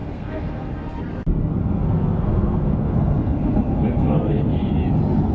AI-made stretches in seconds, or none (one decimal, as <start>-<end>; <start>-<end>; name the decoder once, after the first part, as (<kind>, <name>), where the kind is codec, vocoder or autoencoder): 0.0-1.0 (codec, SNAC); 1.6-4.7